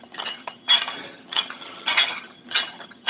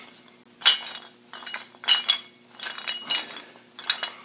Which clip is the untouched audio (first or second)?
second